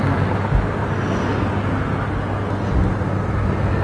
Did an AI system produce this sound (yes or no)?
no